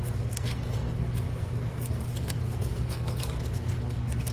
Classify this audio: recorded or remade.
remade